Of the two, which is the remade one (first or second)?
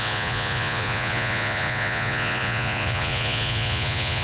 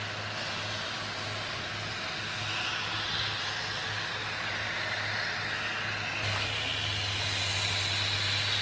first